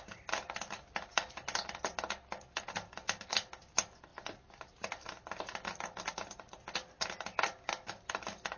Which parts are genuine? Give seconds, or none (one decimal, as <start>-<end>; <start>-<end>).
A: 0.0-8.6